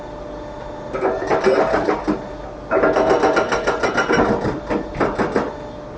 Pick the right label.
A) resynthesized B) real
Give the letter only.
B